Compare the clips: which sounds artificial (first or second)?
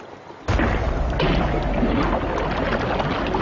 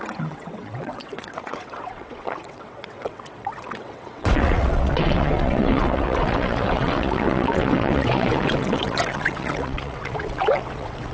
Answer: second